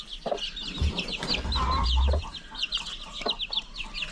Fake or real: real